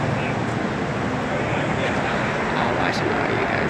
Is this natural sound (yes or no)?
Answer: yes